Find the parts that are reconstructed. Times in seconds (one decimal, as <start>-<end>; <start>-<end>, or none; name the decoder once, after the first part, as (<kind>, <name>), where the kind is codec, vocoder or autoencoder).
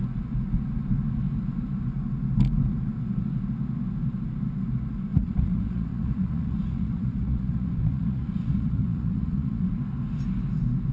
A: 5.1-9.7 (vocoder, Vocos)